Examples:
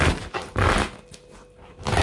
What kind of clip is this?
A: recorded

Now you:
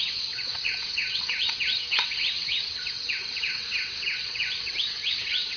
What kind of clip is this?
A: remade